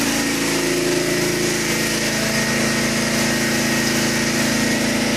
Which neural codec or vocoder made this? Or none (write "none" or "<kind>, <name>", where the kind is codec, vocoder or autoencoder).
none